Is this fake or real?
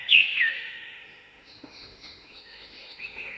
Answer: fake